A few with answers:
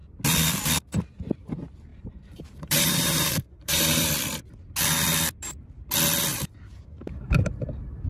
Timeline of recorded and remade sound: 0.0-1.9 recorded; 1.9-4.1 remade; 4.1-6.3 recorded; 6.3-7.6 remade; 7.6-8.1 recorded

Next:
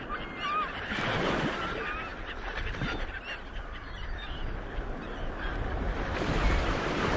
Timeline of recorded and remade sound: 0.0-7.2 recorded

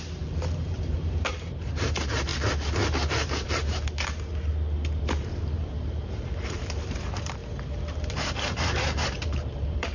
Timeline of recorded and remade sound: 0.0-2.3 remade; 2.3-4.9 recorded; 4.9-7.4 remade; 7.4-8.1 recorded; 8.1-9.9 remade

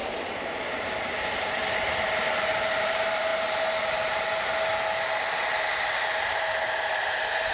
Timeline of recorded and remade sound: 0.0-3.3 remade; 3.3-6.2 recorded; 6.2-7.5 remade

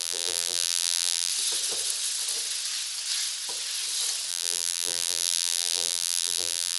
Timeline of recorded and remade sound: 0.0-1.3 remade; 1.3-4.3 recorded; 4.3-6.8 remade

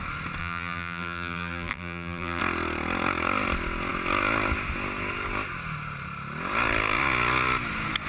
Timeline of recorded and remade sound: 0.0-0.4 recorded; 0.4-2.4 remade; 2.4-8.1 recorded

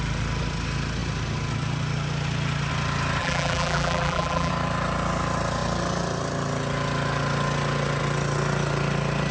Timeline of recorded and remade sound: 0.0-3.2 recorded; 3.2-4.5 remade; 4.5-9.3 recorded

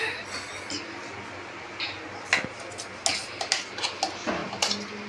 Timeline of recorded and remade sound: 0.0-5.1 recorded